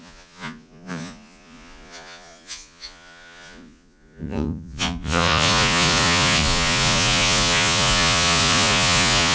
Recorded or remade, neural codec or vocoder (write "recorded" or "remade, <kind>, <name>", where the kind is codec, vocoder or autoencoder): remade, vocoder, Vocos